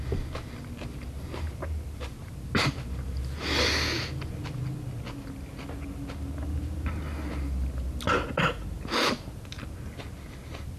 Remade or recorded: recorded